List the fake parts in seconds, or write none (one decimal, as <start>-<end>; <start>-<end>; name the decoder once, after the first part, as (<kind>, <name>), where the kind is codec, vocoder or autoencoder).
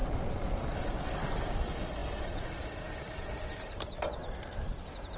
none